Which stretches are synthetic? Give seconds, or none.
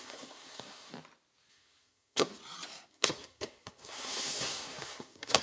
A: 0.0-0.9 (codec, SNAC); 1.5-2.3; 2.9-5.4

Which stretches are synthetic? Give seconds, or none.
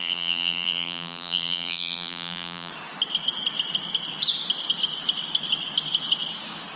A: 0.0-2.7 (vocoder, BigVGAN v2)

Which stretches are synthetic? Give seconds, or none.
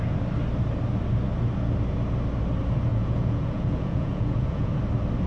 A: 2.9-4.7 (vocoder, Vocos)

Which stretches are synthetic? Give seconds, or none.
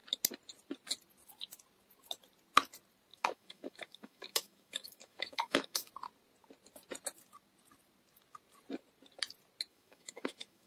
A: 3.1-5.9 (autoencoder, DAC-VAE); 9.7-10.7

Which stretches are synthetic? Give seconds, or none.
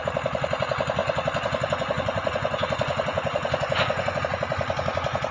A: 1.0-4.2 (vocoder, Vocos)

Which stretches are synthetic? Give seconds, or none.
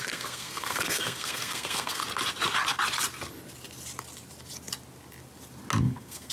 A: 0.0-2.0 (codec, SNAC); 5.8-6.3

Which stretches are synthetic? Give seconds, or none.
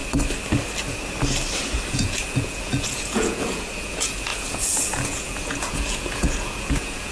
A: 1.9-7.1 (vocoder, Vocos)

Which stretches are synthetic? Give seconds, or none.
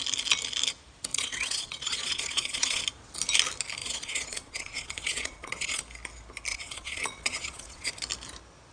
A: 1.1-2.8 (vocoder, Vocos); 3.8-5.8; 6.5-7.9